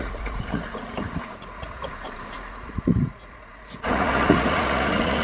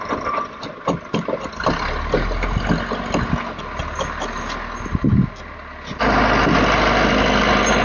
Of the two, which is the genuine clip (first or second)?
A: second